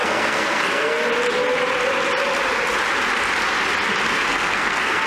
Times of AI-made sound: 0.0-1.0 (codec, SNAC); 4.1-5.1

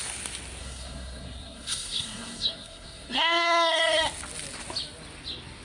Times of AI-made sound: 0.6-4.0 (codec, SNAC)

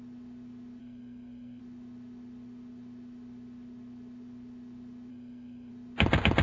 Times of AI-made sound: 0.8-1.6 (codec, SNAC); 5.1-5.7

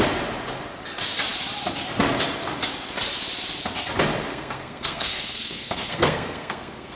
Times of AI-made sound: 4.3-7.0 (codec, SNAC)

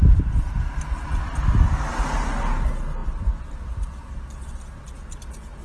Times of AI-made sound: none

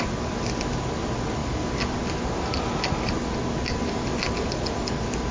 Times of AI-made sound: none